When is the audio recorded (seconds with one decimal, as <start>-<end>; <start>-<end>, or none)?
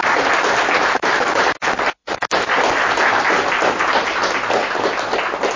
0.0-5.6